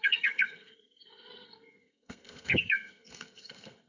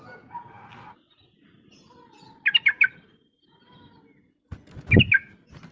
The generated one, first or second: first